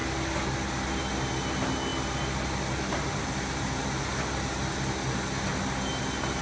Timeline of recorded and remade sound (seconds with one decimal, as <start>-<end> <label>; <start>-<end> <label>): 0.0-6.4 recorded